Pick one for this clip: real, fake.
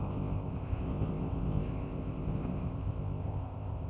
fake